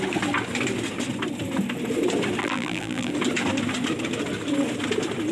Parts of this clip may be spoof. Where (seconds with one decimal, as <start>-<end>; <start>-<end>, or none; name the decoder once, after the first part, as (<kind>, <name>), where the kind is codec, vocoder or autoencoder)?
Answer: 2.4-3.1 (vocoder, BigVGAN v2)